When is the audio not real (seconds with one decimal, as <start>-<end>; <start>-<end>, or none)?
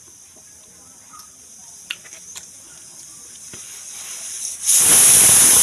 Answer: 4.1-4.9